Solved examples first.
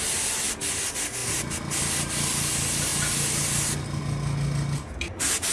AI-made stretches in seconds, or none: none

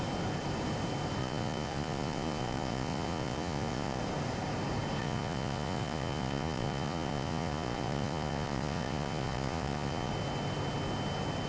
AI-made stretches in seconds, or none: 1.2-4.0 (vocoder, Vocos); 5.0-10.1